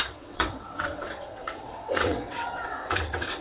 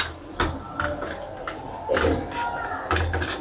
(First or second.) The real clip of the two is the second